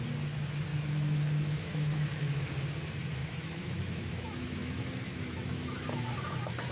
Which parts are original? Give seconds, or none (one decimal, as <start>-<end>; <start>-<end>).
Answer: 0.0-0.7; 2.4-3.2